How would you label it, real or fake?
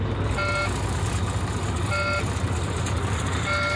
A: real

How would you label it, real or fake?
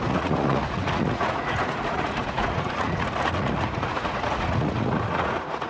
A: fake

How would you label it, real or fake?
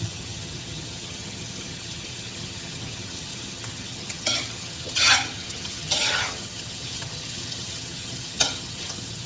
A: fake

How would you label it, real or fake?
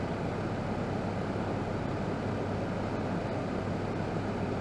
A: real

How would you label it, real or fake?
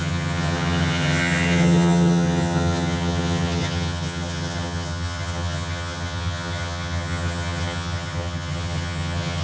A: fake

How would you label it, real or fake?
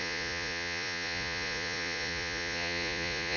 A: fake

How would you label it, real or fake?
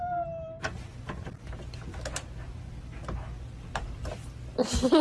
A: real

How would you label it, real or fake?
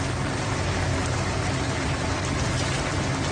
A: real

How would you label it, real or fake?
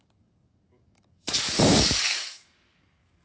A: fake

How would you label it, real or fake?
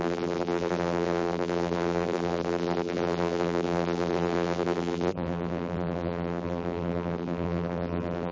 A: fake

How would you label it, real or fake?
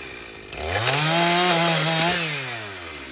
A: real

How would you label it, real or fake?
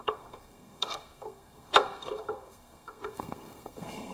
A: fake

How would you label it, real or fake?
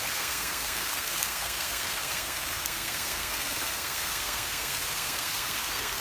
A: fake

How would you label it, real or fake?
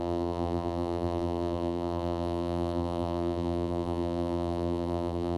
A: fake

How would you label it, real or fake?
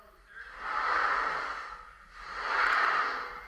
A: real